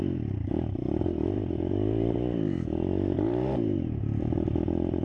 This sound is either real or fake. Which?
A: fake